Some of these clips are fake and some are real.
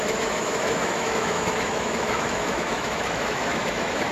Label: fake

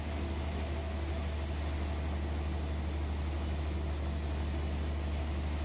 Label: real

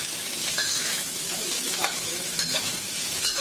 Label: fake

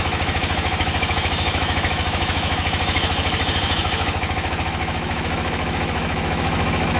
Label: fake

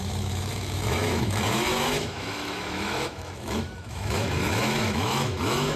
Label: fake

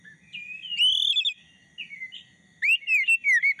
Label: real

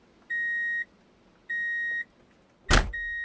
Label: real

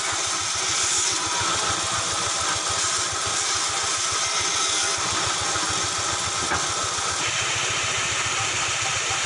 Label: real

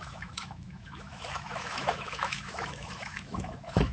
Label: fake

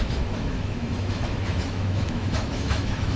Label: fake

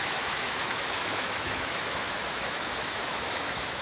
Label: fake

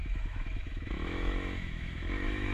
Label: fake